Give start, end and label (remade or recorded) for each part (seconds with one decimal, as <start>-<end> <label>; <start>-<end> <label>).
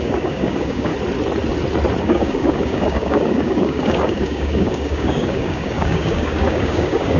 0.0-0.9 remade; 0.9-2.0 recorded; 2.0-7.2 remade